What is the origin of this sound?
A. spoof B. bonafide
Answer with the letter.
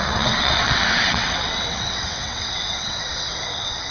A